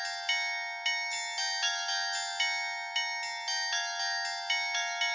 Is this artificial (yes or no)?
no